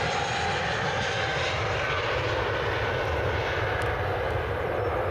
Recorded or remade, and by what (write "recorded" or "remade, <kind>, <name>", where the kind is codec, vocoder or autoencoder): recorded